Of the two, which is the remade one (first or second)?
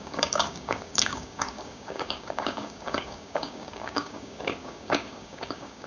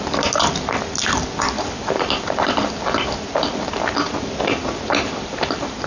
first